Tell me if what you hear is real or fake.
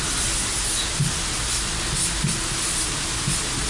real